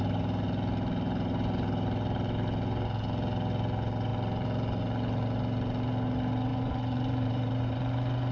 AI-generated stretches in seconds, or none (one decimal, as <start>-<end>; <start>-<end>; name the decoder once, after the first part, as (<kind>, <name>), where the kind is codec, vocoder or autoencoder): 6.5-7.8 (vocoder, BigVGAN v2)